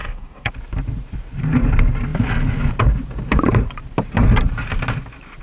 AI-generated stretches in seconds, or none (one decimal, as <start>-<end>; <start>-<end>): 0.0-0.5

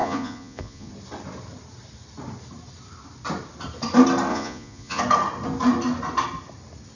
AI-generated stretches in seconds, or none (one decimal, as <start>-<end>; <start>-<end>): 0.0-0.9; 4.3-5.0